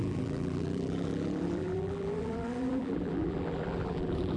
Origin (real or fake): fake